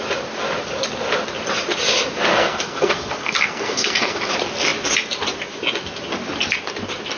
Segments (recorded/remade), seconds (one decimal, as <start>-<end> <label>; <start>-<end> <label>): 0.0-2.3 recorded; 2.3-4.2 remade; 4.2-7.2 recorded